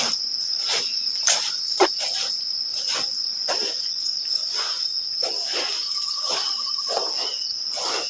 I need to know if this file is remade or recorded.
recorded